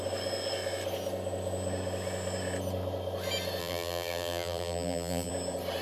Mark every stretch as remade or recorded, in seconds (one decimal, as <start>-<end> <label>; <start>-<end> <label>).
0.0-3.6 recorded; 3.6-5.3 remade; 5.3-5.8 recorded